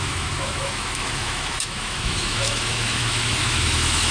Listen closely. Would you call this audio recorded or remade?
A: remade